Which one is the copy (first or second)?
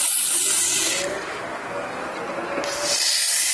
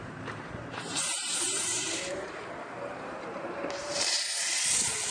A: second